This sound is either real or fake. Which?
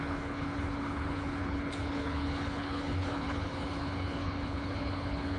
fake